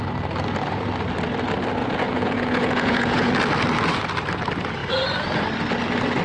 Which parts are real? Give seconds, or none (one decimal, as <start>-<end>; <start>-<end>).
0.0-1.8; 3.3-6.2